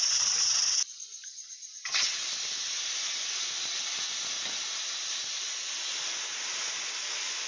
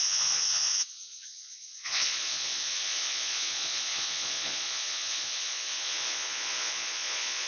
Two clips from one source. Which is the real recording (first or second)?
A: first